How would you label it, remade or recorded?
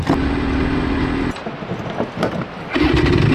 recorded